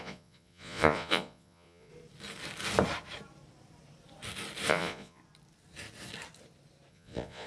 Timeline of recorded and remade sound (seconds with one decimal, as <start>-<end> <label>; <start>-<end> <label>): 0.0-1.9 remade; 1.9-4.7 recorded; 4.7-5.2 remade; 5.2-6.9 recorded; 6.9-7.5 remade